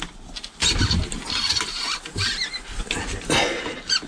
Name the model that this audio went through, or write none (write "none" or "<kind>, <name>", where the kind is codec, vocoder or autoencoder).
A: none